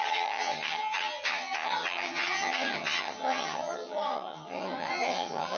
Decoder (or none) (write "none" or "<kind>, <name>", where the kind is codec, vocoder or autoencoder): vocoder, HiFi-GAN